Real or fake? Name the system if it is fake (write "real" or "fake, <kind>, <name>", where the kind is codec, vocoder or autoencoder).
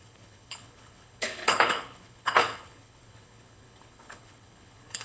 fake, codec, HILCodec